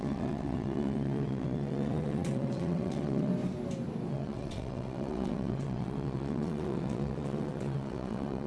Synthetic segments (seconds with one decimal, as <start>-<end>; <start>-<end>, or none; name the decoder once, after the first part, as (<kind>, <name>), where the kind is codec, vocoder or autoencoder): 0.0-3.3 (vocoder, WaveNeXt); 4.1-8.5